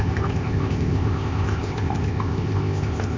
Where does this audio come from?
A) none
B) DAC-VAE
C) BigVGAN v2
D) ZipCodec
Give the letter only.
D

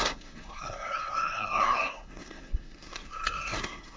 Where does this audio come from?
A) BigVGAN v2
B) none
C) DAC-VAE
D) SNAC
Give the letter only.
D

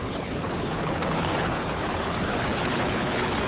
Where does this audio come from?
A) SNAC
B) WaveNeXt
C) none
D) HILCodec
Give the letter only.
D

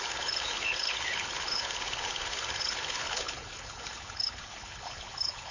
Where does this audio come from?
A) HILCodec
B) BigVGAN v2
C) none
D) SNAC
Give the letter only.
A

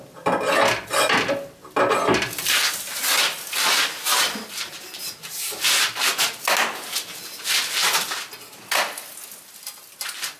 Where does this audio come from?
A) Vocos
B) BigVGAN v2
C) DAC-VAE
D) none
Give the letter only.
D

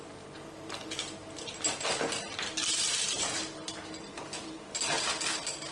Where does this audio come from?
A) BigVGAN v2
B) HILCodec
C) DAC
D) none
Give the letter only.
D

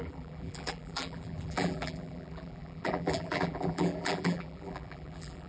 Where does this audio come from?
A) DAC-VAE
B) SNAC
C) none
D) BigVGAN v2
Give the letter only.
D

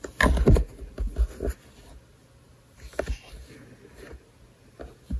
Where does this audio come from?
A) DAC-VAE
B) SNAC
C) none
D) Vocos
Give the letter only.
C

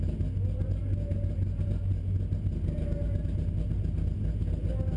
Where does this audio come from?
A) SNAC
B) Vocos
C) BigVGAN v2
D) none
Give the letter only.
D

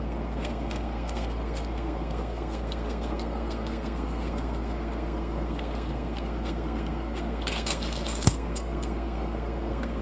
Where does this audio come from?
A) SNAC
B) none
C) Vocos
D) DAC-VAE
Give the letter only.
A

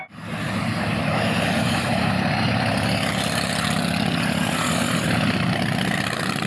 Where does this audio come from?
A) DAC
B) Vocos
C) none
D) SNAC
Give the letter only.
C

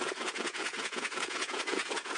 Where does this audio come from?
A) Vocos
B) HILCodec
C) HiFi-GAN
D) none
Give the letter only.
A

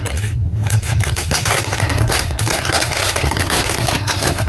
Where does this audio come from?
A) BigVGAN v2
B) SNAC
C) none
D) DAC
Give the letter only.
B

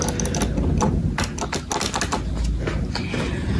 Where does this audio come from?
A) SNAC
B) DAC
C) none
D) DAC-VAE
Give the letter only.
C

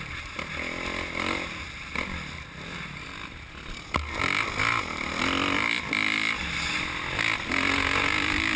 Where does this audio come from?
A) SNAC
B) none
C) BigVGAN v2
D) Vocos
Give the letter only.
B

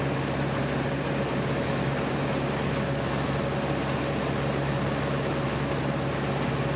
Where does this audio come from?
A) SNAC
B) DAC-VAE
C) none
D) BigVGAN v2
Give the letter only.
C